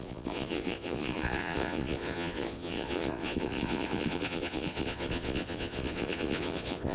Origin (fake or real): fake